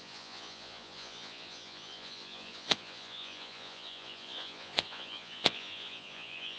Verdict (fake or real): fake